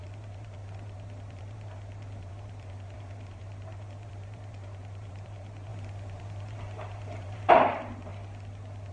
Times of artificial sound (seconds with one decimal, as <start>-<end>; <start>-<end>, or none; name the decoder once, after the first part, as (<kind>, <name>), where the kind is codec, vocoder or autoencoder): 0.0-8.1 (vocoder, BigVGAN v2)